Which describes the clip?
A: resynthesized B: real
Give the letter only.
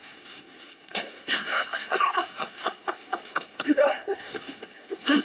A